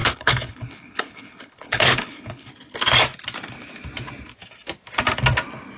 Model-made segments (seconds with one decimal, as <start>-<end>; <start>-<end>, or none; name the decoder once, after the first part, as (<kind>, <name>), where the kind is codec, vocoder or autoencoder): 0.0-2.5 (codec, HILCodec)

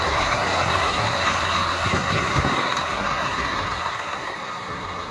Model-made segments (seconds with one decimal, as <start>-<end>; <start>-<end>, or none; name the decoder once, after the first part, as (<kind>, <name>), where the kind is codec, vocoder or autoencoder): 0.0-5.1 (codec, SNAC)

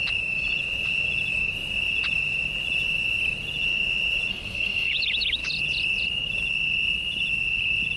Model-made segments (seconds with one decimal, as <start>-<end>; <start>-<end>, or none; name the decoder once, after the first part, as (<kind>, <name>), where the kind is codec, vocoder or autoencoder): 4.3-4.9 (codec, SNAC)

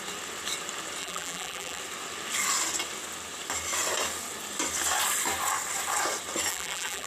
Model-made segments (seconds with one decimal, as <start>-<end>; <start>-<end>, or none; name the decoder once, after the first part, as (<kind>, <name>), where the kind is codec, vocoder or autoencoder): 1.0-1.8 (vocoder, BigVGAN v2); 6.5-7.1

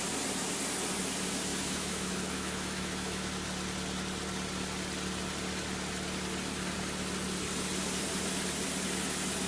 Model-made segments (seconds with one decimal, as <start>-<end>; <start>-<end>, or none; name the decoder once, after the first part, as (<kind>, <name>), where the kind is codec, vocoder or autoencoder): 1.5-3.3 (autoencoder, DAC-VAE)

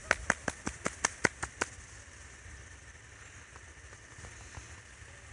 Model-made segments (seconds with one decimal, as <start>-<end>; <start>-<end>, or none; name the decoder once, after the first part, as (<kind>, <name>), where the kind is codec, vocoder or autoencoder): none